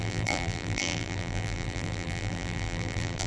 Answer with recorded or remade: remade